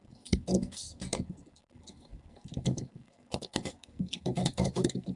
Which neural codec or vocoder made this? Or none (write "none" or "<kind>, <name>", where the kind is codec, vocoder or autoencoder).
codec, SNAC